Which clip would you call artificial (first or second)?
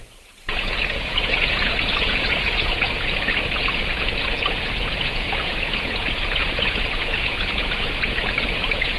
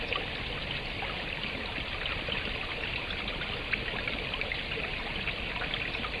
first